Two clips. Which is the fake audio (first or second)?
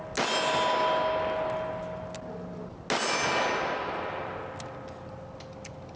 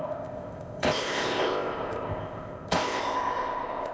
second